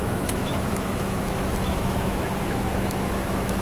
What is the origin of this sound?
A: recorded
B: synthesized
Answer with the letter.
B